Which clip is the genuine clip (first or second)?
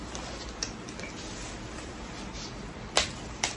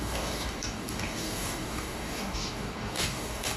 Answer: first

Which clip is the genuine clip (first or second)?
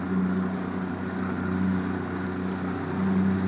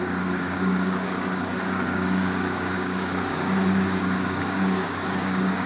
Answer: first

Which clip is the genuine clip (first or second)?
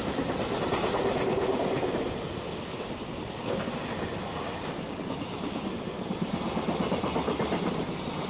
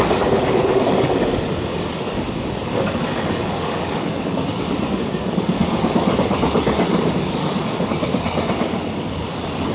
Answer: first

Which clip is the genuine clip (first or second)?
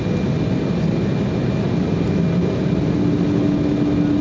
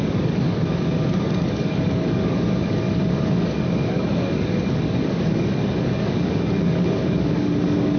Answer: first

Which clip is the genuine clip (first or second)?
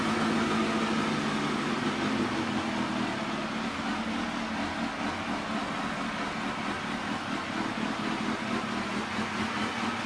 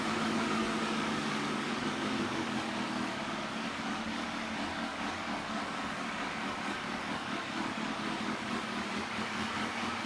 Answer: first